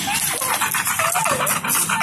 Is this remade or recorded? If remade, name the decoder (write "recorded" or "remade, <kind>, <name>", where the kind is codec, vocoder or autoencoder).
recorded